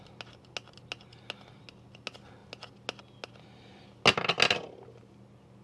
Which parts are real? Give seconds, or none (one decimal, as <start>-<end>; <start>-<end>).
0.0-5.6